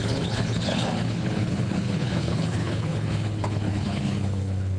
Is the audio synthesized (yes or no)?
yes